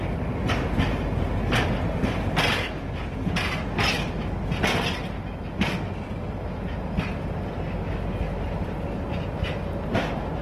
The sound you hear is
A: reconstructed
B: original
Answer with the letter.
B